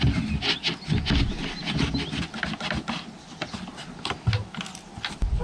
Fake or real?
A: real